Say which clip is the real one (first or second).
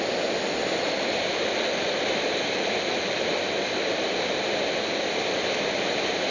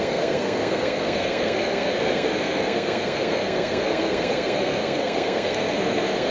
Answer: first